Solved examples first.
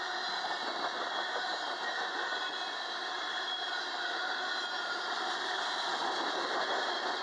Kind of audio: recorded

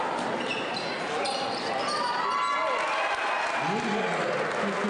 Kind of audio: recorded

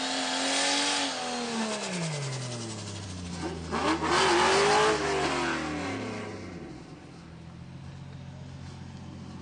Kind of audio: recorded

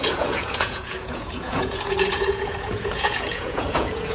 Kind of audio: remade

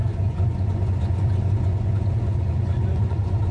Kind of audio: remade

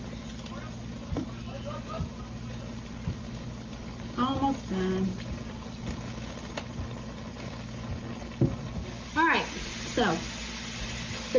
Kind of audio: recorded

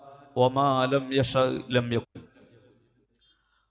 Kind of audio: recorded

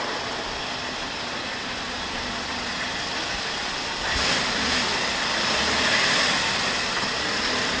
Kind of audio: recorded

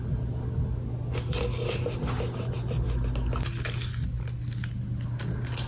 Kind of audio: recorded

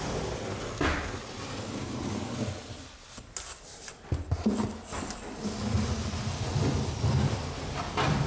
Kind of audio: recorded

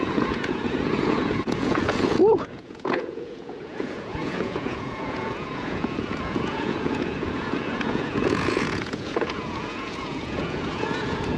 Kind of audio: remade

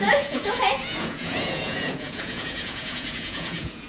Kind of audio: remade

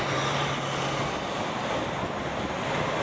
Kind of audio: recorded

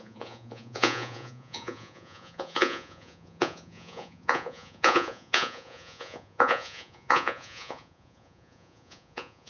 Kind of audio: remade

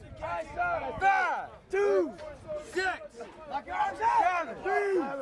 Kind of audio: recorded